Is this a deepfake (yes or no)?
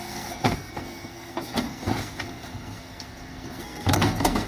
yes